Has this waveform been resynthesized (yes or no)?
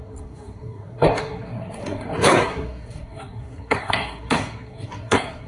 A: yes